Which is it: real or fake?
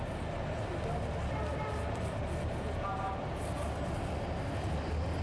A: real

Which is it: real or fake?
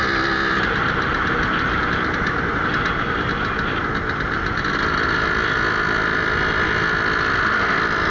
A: real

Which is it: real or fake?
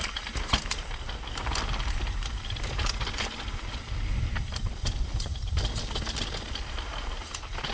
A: real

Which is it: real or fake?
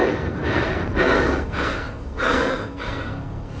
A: fake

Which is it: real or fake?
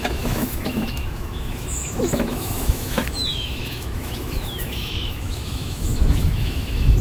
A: fake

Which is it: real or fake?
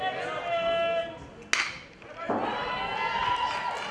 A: real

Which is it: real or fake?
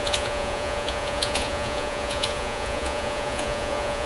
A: fake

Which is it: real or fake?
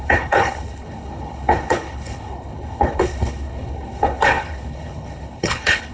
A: fake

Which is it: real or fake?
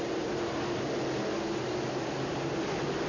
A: real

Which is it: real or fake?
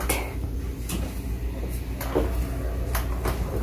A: real